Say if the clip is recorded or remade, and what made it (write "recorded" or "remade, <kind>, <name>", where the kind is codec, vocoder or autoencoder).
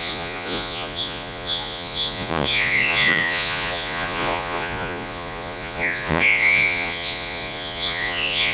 remade, vocoder, Vocos